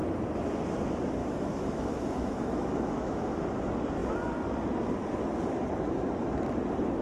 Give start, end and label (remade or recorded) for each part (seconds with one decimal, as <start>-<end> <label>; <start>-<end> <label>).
0.0-1.2 recorded; 1.2-3.4 remade; 3.4-7.0 recorded